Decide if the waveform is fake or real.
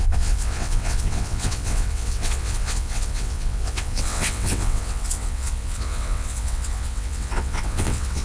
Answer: fake